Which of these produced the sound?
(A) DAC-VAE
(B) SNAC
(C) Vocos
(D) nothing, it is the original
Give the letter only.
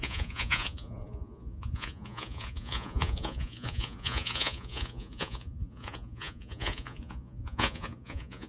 C